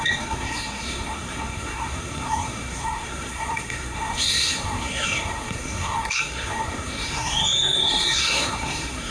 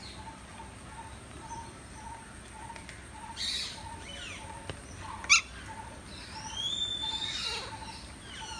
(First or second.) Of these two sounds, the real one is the second